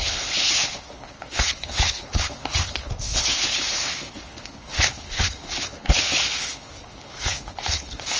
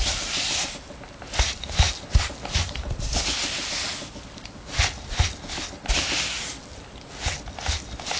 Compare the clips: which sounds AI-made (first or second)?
first